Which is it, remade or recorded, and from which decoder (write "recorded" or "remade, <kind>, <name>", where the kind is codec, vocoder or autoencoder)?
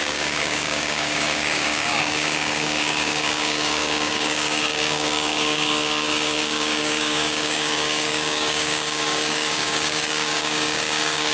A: remade, codec, DAC